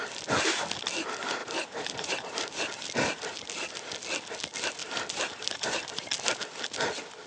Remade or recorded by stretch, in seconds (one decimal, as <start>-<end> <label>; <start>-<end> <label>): 0.0-1.4 recorded; 1.4-2.7 remade; 2.7-4.8 recorded; 4.8-6.1 remade; 6.1-7.3 recorded